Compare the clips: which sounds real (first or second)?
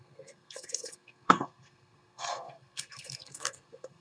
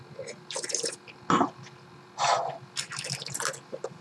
second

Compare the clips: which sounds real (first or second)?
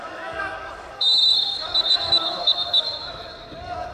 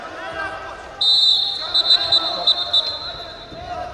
second